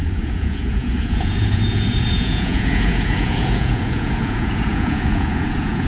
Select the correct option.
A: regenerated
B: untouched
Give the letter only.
A